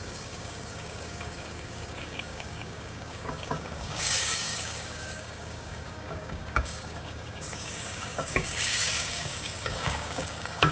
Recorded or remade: remade